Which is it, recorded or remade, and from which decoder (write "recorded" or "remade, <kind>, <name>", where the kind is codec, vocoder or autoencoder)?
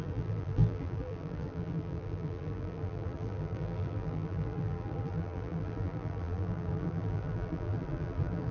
remade, vocoder, BigVGAN v2